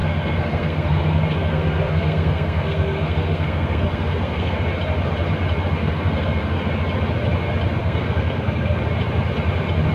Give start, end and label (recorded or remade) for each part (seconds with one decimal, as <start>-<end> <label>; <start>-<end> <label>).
0.0-4.6 remade; 4.6-5.8 recorded; 5.8-6.7 remade; 6.7-7.8 recorded; 7.8-8.8 remade; 8.8-9.9 recorded